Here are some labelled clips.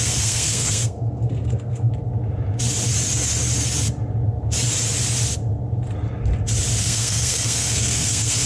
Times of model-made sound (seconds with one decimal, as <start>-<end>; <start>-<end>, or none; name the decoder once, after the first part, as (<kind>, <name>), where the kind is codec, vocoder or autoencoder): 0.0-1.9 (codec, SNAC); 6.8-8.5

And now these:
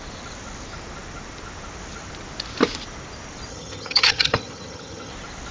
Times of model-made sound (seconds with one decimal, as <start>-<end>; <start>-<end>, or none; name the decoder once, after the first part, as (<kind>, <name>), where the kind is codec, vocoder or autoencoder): 3.5-5.1 (vocoder, HiFi-GAN)

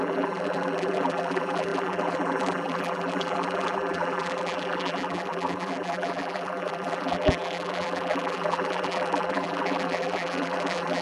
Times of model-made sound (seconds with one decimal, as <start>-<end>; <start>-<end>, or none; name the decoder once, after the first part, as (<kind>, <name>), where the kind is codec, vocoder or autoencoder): 0.0-11.0 (vocoder, BigVGAN v2)

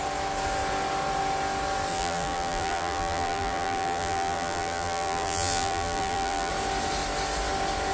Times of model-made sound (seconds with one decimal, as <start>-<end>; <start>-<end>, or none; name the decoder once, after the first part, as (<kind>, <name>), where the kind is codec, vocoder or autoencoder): 1.9-6.5 (vocoder, BigVGAN v2)

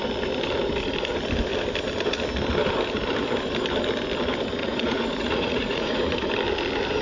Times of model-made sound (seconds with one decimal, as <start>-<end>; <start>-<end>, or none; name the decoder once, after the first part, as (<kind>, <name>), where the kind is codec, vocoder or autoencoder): 4.6-6.3 (vocoder, Vocos)